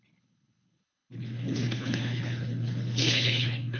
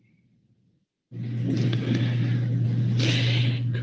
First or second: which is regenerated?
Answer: first